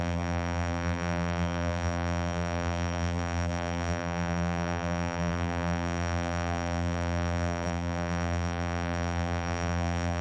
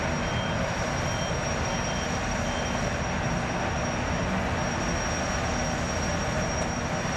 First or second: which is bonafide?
second